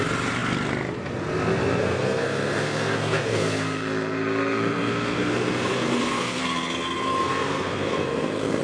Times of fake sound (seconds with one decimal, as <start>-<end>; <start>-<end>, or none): 1.8-6.4; 7.2-8.6